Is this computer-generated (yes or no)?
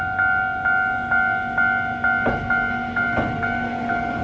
no